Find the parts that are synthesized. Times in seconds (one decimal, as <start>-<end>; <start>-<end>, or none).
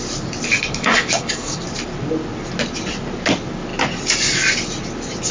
0.5-1.6